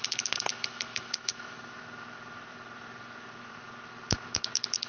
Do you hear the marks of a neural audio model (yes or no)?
no